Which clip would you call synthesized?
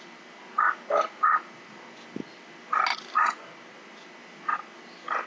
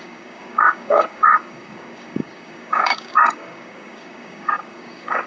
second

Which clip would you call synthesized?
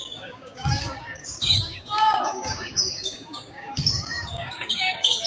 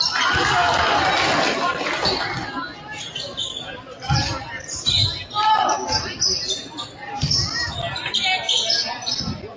first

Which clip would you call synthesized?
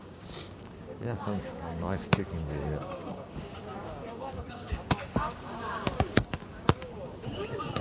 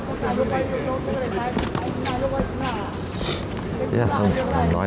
first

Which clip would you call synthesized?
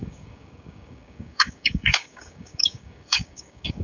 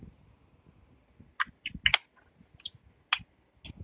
first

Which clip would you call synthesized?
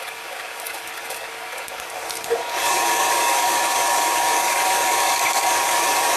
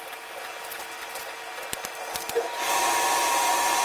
first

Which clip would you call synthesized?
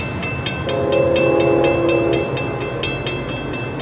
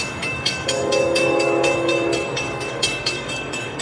second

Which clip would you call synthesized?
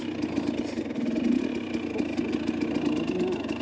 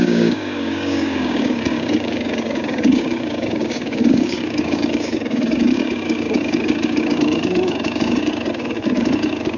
second